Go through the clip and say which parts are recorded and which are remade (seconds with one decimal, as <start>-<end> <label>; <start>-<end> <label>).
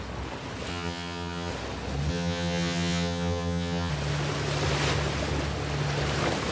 0.0-0.7 recorded; 0.7-1.5 remade; 1.5-2.1 recorded; 2.1-3.9 remade; 3.9-6.5 recorded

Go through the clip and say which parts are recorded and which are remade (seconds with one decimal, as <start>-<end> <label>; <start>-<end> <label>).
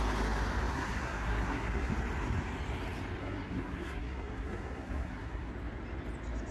0.0-0.7 recorded; 0.7-1.9 remade; 1.9-3.2 recorded; 3.2-5.5 remade; 5.5-6.5 recorded